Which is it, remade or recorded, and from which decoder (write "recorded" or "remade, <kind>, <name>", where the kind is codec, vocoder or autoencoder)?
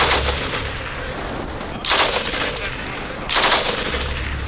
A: recorded